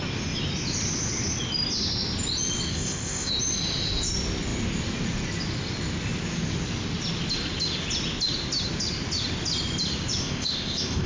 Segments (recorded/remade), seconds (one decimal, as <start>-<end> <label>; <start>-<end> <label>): 0.0-2.7 recorded; 2.7-3.3 remade; 3.3-10.2 recorded; 10.2-11.1 remade